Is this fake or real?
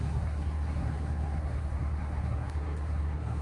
fake